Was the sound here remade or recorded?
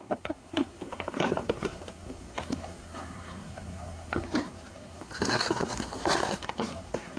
remade